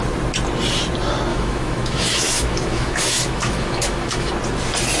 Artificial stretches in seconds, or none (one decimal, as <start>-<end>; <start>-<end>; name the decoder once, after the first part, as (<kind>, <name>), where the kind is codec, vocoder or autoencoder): 1.3-4.3 (autoencoder, DAC-VAE)